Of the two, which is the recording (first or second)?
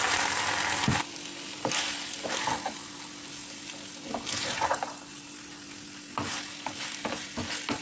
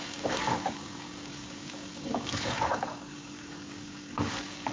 first